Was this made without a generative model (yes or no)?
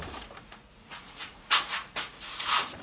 no